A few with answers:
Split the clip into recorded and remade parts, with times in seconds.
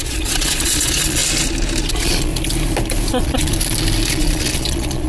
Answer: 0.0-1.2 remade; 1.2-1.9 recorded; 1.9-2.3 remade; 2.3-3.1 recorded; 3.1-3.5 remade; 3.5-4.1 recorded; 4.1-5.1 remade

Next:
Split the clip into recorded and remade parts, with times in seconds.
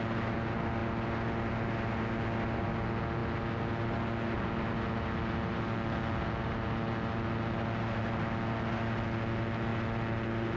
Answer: 0.0-10.6 recorded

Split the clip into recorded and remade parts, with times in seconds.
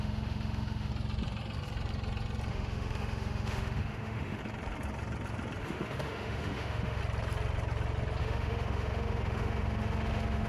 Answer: 0.0-0.9 remade; 0.9-2.5 recorded; 2.5-4.4 remade; 4.4-5.6 recorded; 5.6-7.0 remade; 7.0-8.2 recorded; 8.2-10.5 remade